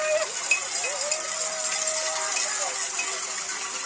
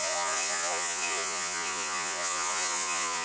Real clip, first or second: first